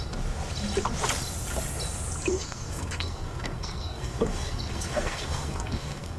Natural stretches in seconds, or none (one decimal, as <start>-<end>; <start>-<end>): 0.0-2.3